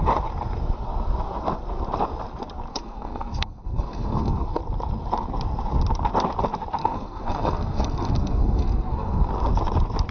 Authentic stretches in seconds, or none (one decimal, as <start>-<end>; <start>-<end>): 0.0-2.7; 4.6-6.8; 9.3-10.1